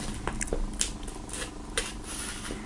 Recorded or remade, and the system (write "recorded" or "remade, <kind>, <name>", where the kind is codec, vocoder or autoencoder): recorded